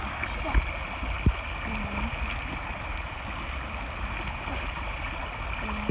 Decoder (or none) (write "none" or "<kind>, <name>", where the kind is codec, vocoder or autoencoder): none